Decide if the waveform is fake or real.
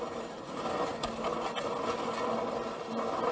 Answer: real